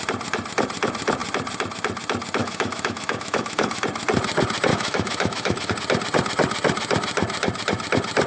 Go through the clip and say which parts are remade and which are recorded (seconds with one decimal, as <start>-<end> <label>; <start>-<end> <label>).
0.0-2.4 recorded; 2.4-3.8 remade; 3.8-4.7 recorded; 4.7-5.7 remade; 5.7-8.3 recorded